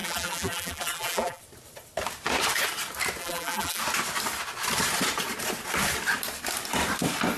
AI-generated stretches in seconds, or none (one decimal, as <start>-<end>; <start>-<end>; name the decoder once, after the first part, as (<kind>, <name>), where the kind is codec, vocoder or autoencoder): 0.0-1.4 (vocoder, BigVGAN v2); 3.2-3.8